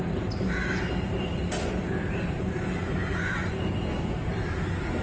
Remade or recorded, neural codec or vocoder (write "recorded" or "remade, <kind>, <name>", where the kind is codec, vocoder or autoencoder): recorded